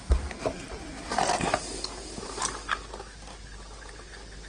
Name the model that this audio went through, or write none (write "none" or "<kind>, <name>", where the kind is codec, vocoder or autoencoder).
none